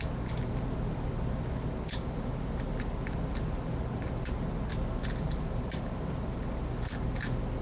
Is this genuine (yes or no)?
yes